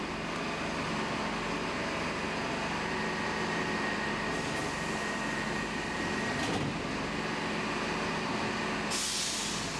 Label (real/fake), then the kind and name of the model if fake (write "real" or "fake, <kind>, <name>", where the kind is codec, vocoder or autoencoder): real